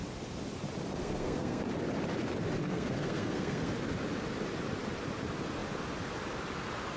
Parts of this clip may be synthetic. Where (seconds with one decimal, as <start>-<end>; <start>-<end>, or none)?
1.0-1.6; 2.6-3.7